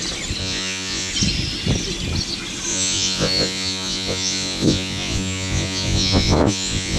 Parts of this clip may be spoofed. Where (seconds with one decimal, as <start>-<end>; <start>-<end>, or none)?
0.4-1.1; 2.7-7.0